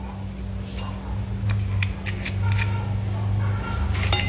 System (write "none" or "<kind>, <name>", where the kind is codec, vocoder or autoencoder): none